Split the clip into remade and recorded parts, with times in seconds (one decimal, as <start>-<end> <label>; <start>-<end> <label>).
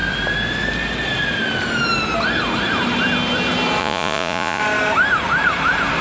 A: 0.0-3.8 recorded; 3.8-4.6 remade; 4.6-6.0 recorded